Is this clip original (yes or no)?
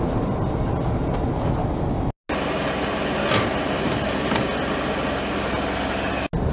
yes